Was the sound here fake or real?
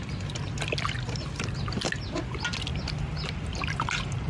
real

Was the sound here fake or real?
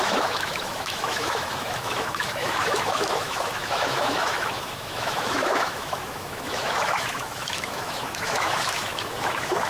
fake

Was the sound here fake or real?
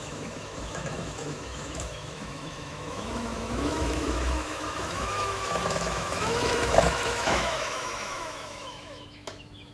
fake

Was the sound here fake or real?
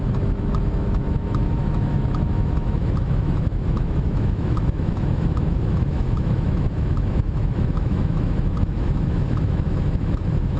fake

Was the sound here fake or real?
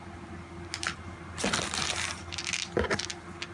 real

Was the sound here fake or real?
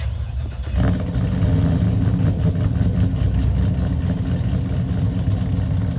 real